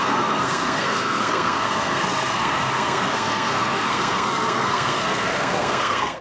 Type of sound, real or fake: fake